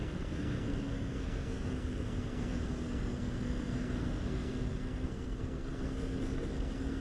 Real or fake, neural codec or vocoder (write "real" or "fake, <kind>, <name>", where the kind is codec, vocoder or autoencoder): fake, codec, SNAC